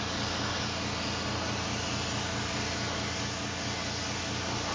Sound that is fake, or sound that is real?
real